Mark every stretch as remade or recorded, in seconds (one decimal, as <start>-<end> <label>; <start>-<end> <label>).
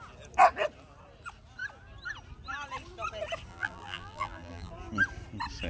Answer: 0.0-3.5 recorded; 3.5-4.7 remade; 4.7-5.7 recorded